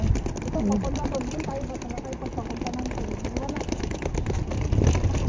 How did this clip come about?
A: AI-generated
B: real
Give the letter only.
B